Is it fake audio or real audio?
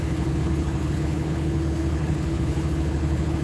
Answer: fake